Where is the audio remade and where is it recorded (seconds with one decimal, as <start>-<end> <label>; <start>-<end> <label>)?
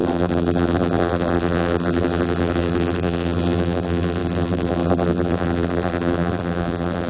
0.0-7.1 remade